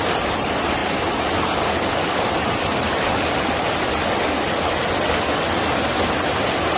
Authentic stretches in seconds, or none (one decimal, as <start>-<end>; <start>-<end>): 0.0-6.8